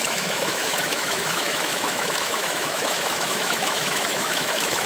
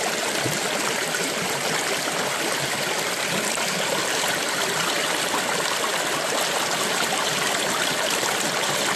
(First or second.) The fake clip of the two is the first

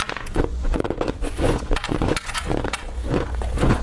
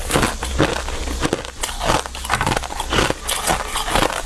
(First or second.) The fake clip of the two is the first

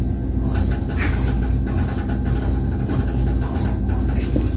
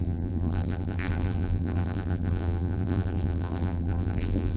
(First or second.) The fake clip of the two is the second